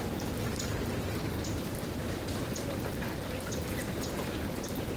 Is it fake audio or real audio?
fake